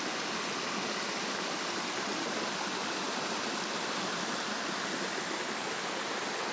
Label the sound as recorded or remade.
recorded